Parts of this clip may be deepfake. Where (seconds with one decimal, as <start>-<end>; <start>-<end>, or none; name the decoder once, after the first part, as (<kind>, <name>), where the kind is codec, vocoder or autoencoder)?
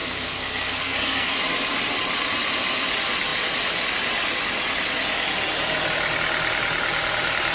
0.0-1.4 (codec, SNAC)